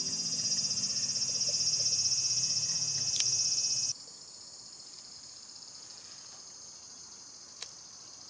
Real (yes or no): yes